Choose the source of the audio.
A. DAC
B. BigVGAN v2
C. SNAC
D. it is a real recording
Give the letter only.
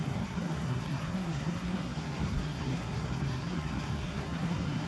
C